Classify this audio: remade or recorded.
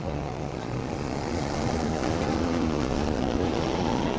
remade